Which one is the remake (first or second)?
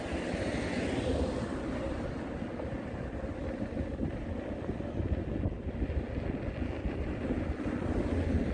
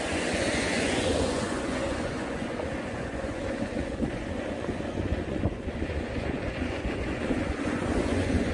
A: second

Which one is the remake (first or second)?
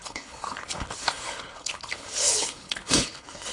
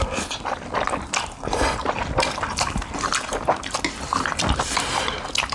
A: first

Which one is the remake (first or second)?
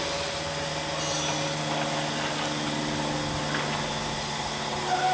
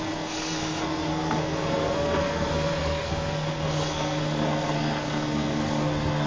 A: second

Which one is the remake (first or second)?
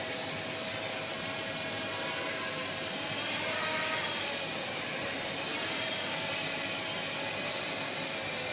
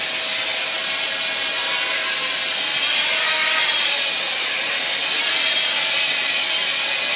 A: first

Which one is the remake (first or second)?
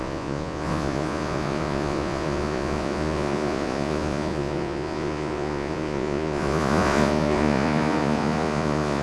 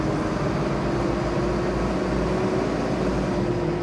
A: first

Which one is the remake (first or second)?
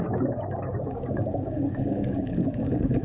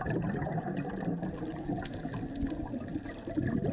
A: first